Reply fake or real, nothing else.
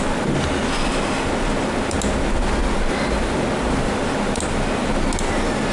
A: real